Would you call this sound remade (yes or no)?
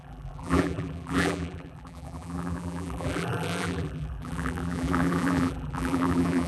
yes